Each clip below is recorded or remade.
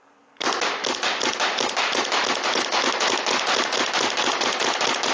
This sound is recorded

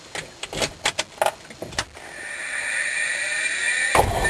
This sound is recorded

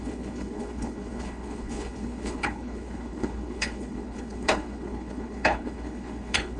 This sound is remade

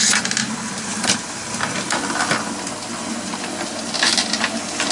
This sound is recorded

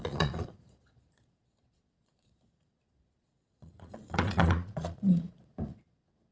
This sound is remade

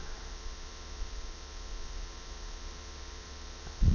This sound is remade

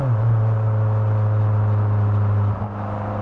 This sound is recorded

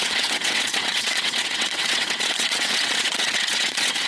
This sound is remade